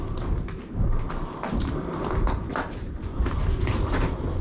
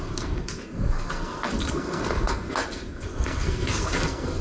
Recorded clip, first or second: first